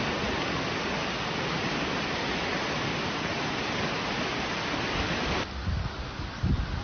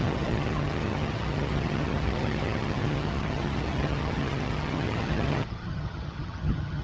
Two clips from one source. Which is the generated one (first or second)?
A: second